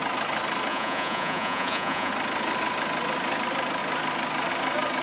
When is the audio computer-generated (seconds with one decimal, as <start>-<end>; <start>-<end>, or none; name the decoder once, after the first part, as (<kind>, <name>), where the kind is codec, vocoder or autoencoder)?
0.7-2.1 (vocoder, Vocos)